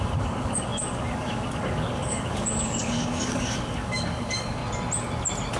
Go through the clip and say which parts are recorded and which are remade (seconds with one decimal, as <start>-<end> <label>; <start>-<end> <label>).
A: 0.0-4.6 remade; 4.6-5.6 recorded